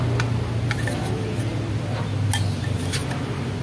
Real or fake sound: real